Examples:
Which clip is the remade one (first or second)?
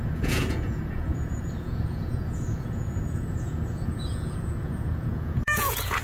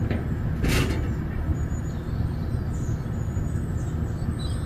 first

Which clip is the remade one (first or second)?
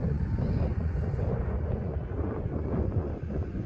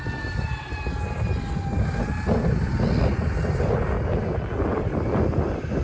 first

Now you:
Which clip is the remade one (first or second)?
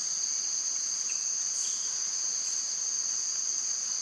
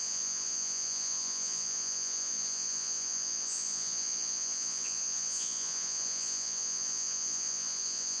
second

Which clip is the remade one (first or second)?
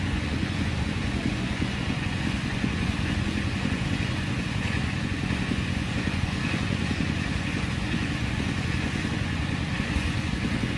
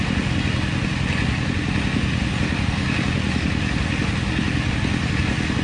first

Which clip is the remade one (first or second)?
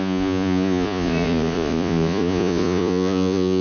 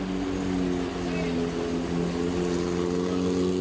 first